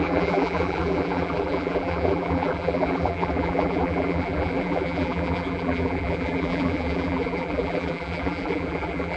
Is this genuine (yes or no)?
no